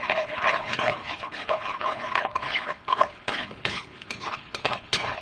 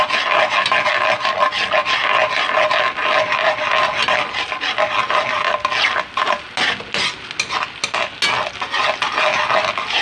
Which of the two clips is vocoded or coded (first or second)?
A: first